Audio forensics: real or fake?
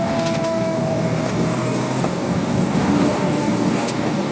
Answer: fake